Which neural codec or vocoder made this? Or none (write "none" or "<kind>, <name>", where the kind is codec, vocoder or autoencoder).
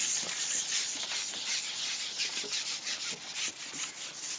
none